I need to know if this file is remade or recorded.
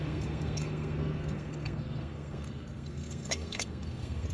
remade